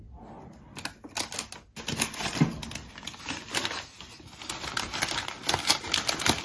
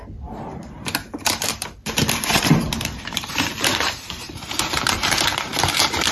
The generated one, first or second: second